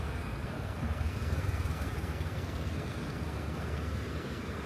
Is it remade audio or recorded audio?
remade